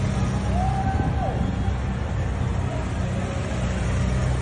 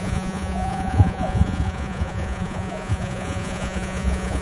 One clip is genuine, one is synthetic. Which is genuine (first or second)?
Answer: first